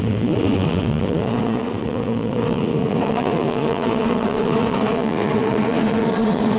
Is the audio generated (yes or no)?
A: yes